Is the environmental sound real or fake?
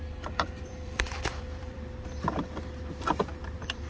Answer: fake